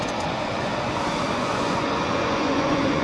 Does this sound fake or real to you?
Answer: fake